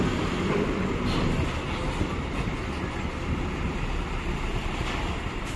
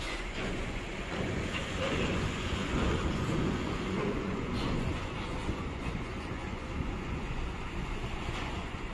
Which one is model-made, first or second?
second